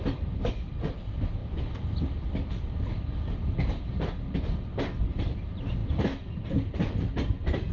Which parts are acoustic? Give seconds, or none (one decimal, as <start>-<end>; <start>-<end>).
0.0-7.7